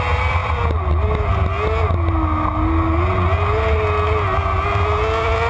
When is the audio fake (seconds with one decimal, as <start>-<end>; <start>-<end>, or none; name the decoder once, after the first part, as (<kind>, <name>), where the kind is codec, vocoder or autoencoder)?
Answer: none